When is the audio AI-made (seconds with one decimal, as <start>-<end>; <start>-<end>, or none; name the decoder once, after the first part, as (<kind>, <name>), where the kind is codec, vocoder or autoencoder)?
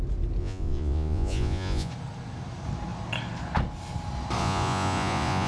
0.4-1.9 (vocoder, Vocos); 4.4-5.5